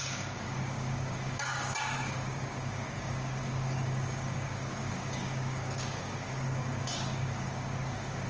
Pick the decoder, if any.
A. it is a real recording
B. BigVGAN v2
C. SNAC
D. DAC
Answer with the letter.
D